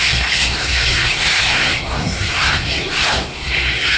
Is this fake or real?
fake